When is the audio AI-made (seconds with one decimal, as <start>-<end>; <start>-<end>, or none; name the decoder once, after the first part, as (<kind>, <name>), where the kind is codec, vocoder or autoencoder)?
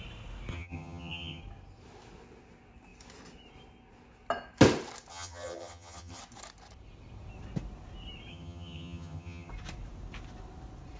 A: 0.5-1.4 (vocoder, HiFi-GAN); 5.1-6.2; 8.3-9.5